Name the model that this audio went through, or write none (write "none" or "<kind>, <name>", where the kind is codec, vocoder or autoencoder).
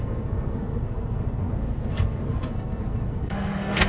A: codec, SNAC